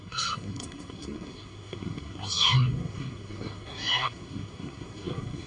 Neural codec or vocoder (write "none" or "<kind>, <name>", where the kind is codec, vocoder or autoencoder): codec, SNAC